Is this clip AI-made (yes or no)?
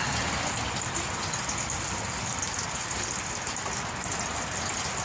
no